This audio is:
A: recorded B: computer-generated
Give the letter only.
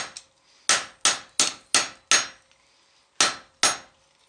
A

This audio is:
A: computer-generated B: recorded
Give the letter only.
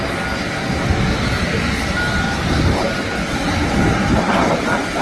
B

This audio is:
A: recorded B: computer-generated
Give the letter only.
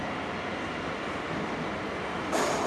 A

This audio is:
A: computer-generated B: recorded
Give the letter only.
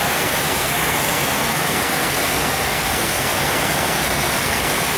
A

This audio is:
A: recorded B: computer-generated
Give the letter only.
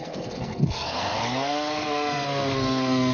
B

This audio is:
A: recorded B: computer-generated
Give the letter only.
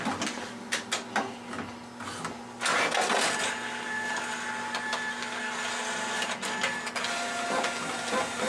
A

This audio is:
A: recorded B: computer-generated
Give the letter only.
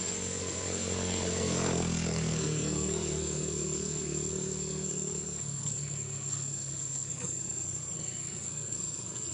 B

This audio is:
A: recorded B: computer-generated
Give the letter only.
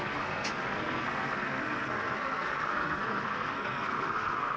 B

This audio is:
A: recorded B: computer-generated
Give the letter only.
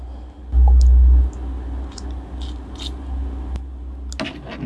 A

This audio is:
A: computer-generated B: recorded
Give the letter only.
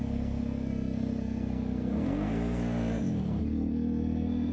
A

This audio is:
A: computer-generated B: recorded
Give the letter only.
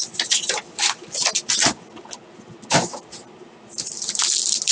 B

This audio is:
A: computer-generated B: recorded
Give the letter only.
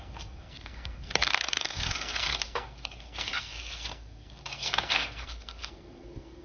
A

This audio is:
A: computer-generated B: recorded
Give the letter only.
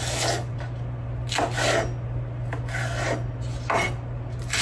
B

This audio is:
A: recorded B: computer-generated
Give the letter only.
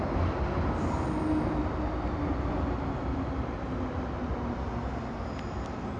A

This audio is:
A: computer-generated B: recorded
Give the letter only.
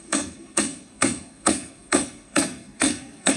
A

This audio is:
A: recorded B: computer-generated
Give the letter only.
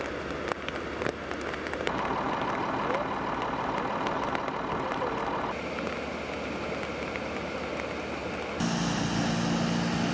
A